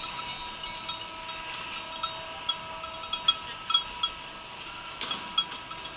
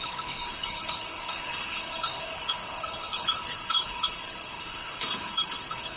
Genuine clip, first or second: first